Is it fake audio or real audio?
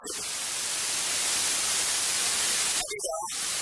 real